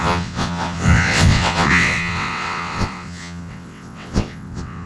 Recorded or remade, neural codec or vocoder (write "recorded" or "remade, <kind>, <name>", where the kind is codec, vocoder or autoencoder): remade, vocoder, WaveNeXt